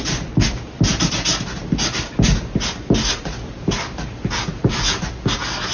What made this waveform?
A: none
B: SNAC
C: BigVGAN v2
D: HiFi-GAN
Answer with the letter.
A